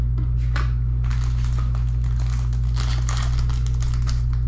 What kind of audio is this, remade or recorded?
recorded